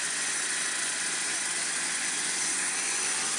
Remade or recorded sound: remade